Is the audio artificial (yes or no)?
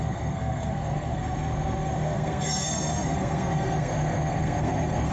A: yes